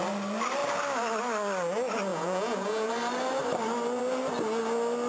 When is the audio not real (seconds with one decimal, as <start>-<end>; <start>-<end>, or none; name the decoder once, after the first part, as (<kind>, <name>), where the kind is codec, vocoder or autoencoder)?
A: 2.1-2.9 (vocoder, Vocos)